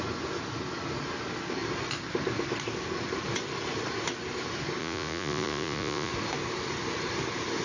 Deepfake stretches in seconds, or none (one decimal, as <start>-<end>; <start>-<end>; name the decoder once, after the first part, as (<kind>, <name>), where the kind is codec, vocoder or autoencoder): 4.8-6.1 (vocoder, Vocos)